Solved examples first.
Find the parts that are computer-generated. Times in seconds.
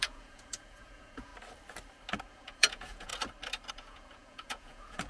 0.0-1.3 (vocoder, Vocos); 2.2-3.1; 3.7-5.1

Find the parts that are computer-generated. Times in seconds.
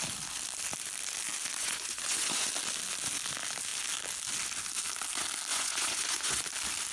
1.6-2.5 (vocoder, Vocos); 5.5-6.4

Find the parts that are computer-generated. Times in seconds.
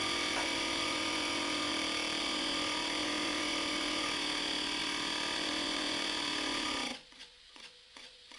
0.0-1.7 (vocoder, Vocos); 2.2-8.4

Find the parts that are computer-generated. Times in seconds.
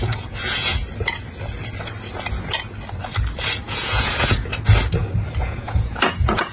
0.0-0.8 (vocoder, Vocos); 3.7-4.5; 5.4-6.5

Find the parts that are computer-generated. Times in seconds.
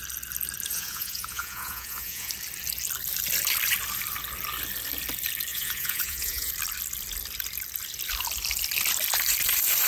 0.7-2.3 (vocoder, Vocos); 5.5-6.5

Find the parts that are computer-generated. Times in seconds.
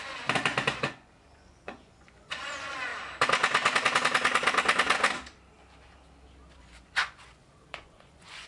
0.0-2.9 (vocoder, Vocos); 6.6-8.5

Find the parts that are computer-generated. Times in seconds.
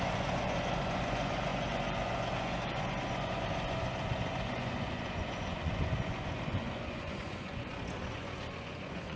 0.0-9.2 (vocoder, Vocos)